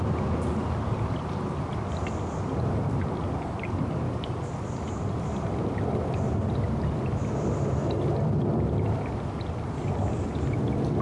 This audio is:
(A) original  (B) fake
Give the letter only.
A